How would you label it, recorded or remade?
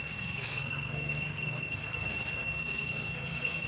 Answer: remade